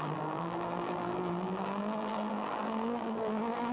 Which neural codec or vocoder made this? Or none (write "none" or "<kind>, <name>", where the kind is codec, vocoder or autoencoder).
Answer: vocoder, BigVGAN v2